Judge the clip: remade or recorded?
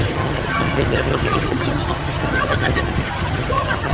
remade